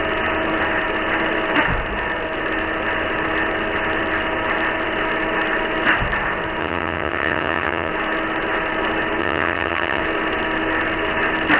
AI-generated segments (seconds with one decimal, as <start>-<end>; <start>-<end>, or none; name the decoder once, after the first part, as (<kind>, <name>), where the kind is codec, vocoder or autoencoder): 6.6-7.9 (vocoder, HiFi-GAN); 9.2-10.0